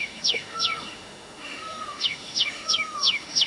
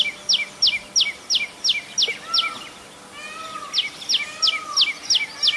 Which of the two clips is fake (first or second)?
first